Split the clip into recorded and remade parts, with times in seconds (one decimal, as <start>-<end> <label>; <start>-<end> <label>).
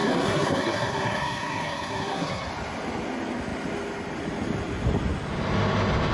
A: 0.0-2.5 remade; 2.5-6.1 recorded